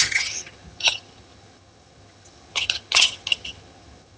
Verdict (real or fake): fake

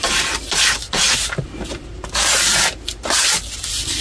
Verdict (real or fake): real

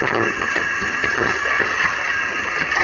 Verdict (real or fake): fake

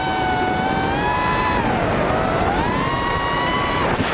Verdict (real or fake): real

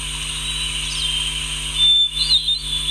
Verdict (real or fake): real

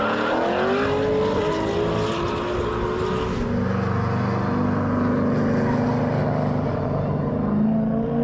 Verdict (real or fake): real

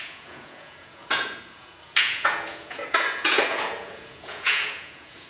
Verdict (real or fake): fake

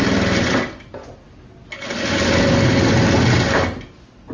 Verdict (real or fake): real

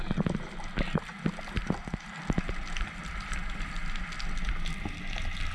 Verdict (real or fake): real